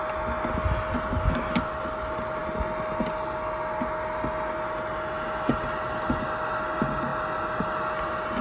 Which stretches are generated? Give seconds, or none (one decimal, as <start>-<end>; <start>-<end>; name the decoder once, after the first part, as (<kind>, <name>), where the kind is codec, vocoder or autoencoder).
none